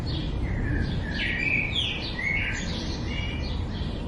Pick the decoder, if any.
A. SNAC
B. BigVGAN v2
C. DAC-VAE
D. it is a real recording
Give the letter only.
D